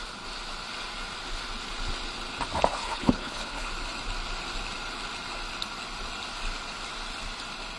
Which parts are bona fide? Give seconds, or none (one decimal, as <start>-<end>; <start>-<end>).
0.0-2.7; 3.7-7.8